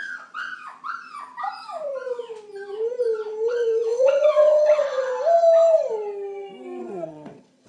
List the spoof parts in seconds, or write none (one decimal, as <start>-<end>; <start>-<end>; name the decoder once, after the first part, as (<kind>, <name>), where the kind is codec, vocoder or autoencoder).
0.0-0.5 (vocoder, WaveNeXt); 3.5-5.1; 6.8-7.7